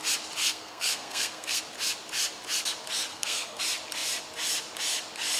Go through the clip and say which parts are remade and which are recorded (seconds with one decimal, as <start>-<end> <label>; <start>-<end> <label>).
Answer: 0.0-0.4 recorded; 0.4-1.6 remade; 1.6-3.1 recorded; 3.1-3.6 remade; 3.6-5.4 recorded